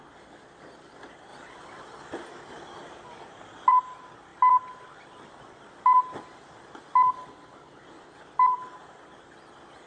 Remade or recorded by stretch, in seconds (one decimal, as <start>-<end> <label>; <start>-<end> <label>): 0.0-9.9 recorded